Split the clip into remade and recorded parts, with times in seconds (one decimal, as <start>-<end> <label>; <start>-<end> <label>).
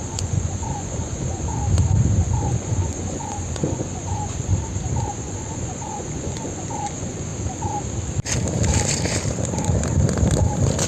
0.0-1.5 remade; 1.5-2.2 recorded; 2.2-4.5 remade; 4.5-5.1 recorded; 5.1-7.3 remade; 7.3-10.9 recorded